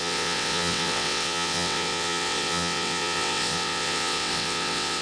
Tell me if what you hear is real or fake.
fake